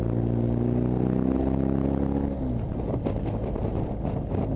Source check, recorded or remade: recorded